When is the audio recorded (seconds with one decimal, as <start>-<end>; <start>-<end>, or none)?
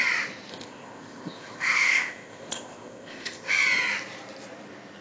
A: 0.0-0.5; 3.5-5.0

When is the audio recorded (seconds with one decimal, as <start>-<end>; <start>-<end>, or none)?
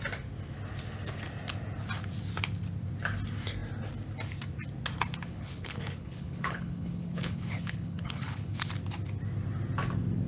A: 0.0-5.3; 8.7-10.3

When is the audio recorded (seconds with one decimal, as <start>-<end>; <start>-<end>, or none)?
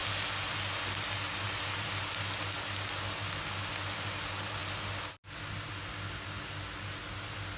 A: 0.0-7.6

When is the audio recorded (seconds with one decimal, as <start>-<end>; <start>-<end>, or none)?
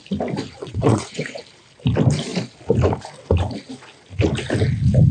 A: 0.0-0.6; 1.4-5.1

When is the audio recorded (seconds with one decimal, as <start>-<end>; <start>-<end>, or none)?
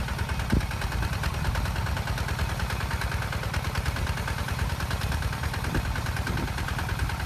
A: 0.0-7.3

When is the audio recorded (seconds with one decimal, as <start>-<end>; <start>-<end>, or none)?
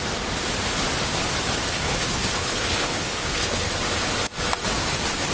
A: 0.0-1.7; 3.7-5.3